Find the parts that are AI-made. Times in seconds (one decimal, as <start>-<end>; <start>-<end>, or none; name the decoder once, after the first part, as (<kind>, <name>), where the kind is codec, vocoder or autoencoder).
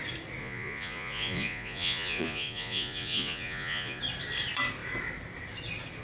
0.4-4.0 (vocoder, Vocos)